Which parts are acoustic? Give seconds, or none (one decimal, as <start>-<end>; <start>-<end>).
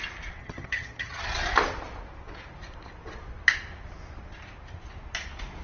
0.0-0.4; 1.2-5.6